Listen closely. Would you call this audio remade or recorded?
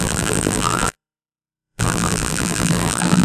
remade